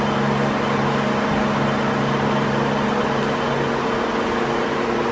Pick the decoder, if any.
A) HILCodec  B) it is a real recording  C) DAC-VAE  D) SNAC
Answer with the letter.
B